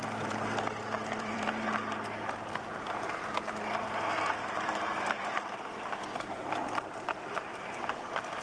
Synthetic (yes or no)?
yes